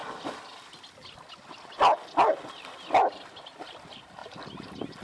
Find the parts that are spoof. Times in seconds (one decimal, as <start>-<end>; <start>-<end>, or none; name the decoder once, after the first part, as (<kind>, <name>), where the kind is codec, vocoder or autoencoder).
none